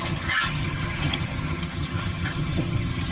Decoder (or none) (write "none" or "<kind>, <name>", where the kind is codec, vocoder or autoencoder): vocoder, HiFi-GAN